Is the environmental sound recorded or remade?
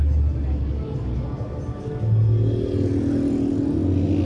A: recorded